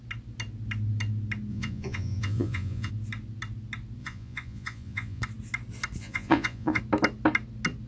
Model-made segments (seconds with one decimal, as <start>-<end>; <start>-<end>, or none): 1.5-2.9; 4.0-5.2; 6.0-6.8